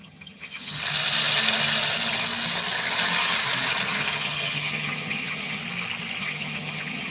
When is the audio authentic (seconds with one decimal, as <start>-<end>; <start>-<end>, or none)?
0.8-3.9; 5.6-6.2